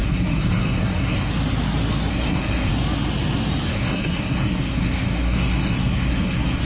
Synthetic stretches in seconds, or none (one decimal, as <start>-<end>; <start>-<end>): 0.0-1.3; 2.1-2.7; 3.7-6.6